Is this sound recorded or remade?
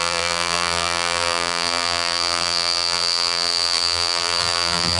remade